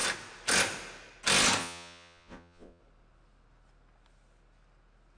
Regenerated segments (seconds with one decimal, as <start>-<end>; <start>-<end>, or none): 1.6-2.8